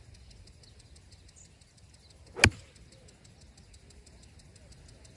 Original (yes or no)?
yes